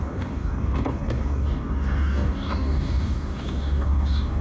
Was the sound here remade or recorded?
remade